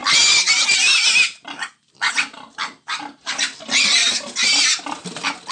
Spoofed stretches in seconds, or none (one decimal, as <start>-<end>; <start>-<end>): 0.0-3.3; 4.0-4.6